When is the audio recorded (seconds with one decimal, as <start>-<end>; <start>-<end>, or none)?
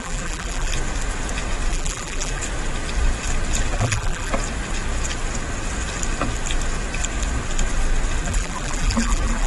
0.7-1.7; 2.4-3.7; 4.3-8.2